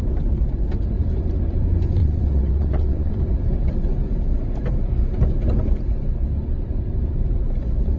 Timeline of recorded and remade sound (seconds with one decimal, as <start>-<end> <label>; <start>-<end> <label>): 0.0-2.0 recorded; 2.0-3.1 remade; 3.1-8.0 recorded